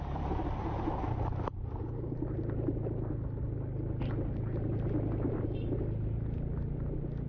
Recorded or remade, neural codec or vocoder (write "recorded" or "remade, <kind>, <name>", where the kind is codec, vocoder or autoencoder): recorded